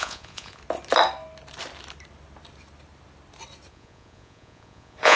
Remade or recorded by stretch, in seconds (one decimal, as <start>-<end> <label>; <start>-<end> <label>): 0.0-0.6 remade; 0.6-3.7 recorded; 3.7-5.2 remade